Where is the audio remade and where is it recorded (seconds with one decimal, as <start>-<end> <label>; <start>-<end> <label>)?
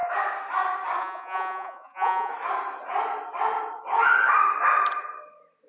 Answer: 0.0-1.0 recorded; 1.0-2.3 remade; 2.3-5.7 recorded